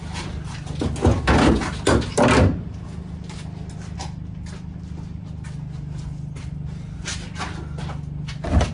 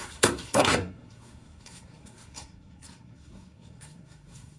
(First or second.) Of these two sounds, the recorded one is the first